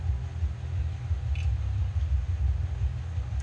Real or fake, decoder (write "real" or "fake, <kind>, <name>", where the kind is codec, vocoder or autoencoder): real